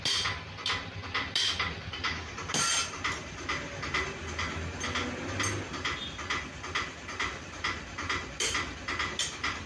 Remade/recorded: recorded